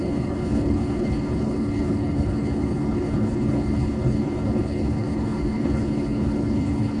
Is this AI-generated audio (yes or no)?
yes